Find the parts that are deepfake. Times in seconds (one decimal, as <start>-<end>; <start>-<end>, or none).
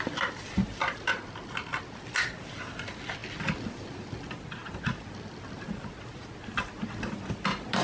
none